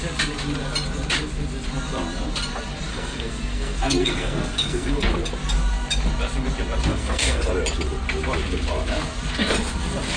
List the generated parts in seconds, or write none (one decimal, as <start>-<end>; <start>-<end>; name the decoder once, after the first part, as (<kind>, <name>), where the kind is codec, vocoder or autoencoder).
2.9-5.0 (codec, SNAC); 6.9-7.5